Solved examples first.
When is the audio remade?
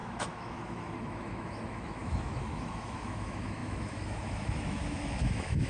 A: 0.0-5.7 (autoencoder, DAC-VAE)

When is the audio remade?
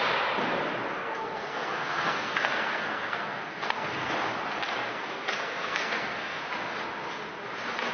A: 1.0-4.1 (codec, SNAC); 4.9-6.4